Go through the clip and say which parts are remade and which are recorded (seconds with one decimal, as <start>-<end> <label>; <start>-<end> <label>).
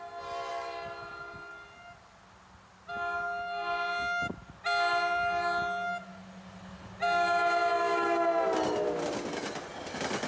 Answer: 0.0-10.3 recorded